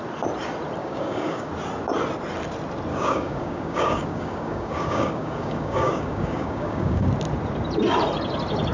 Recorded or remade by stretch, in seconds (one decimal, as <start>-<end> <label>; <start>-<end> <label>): 0.0-0.8 recorded; 0.8-1.5 remade; 1.5-2.9 recorded; 2.9-7.1 remade; 7.1-8.7 recorded